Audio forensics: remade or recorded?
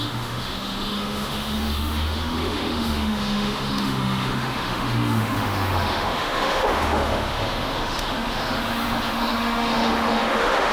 remade